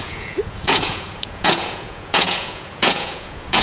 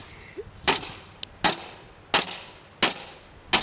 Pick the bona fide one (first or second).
second